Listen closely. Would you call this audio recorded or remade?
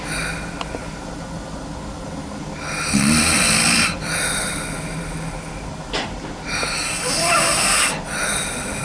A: recorded